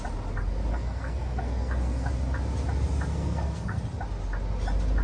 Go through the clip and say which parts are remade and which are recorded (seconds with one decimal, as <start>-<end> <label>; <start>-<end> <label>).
0.0-0.7 recorded; 0.7-2.1 remade; 2.1-3.1 recorded; 3.1-3.8 remade; 3.8-5.0 recorded

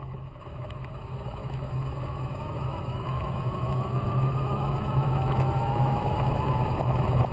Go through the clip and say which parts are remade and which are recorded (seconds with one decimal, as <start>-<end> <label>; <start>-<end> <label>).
0.0-7.3 remade

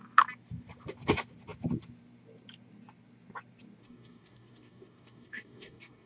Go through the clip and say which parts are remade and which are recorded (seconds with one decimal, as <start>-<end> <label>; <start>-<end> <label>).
0.0-3.8 recorded; 3.8-6.1 remade

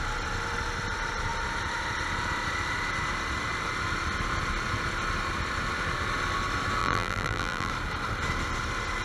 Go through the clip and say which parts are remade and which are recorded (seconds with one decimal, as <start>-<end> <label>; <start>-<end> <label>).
0.0-6.8 recorded; 6.8-7.7 remade; 7.7-9.0 recorded

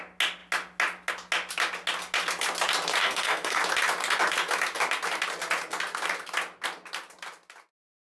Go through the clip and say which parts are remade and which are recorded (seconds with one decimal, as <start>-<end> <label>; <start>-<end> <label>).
0.0-3.0 recorded; 3.0-3.6 remade; 3.6-8.1 recorded

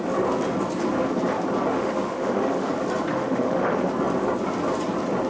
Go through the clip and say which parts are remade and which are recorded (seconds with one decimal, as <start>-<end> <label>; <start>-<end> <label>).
0.0-1.7 recorded; 1.7-2.7 remade; 2.7-3.1 recorded; 3.1-3.9 remade; 3.9-5.3 recorded

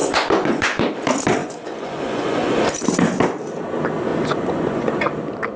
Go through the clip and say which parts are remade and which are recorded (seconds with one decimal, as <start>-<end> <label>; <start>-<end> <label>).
0.0-0.8 remade; 0.8-1.4 recorded; 1.4-2.5 remade; 2.5-4.1 recorded; 4.1-4.9 remade; 4.9-5.6 recorded